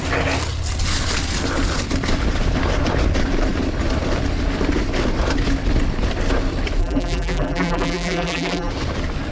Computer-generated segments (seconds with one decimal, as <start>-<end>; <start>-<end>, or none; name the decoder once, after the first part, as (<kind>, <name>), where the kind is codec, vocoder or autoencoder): 6.8-8.7 (vocoder, BigVGAN v2)